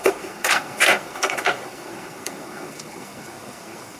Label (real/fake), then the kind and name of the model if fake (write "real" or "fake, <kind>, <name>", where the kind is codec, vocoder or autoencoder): fake, codec, SNAC